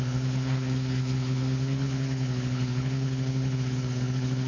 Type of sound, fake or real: fake